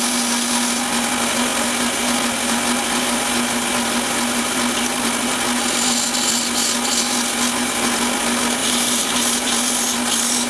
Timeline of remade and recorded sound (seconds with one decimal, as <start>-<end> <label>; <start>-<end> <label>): 0.0-8.6 recorded; 8.6-9.5 remade; 9.5-10.5 recorded